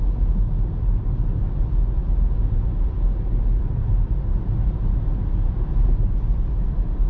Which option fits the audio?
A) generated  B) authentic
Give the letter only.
B